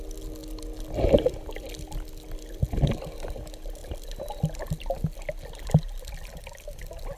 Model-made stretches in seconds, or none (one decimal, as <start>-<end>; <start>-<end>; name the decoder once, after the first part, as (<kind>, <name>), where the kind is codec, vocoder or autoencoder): none